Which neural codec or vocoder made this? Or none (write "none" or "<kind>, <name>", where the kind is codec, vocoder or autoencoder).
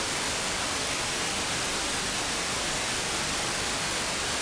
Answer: none